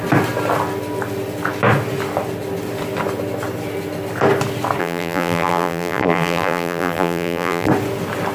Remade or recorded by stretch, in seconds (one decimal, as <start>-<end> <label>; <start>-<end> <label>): 0.0-4.8 recorded; 4.8-7.7 remade; 7.7-8.3 recorded